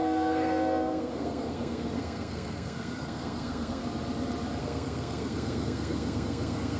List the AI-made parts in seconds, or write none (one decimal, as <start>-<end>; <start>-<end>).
0.0-3.8; 4.6-6.8